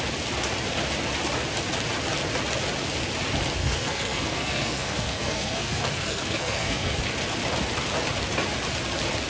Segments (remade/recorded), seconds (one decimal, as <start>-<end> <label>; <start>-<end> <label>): 0.0-3.6 recorded; 3.6-7.0 remade; 7.0-9.3 recorded